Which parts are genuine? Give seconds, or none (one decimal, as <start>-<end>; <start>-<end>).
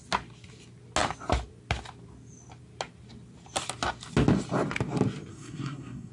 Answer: 0.0-5.3